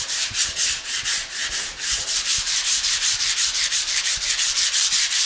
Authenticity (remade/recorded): remade